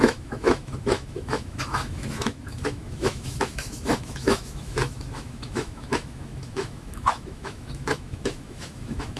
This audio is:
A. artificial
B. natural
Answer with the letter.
A